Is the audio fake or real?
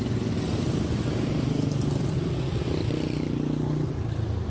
real